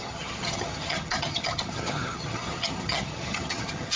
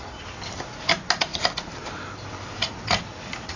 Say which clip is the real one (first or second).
second